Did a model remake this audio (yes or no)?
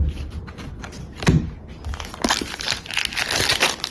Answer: no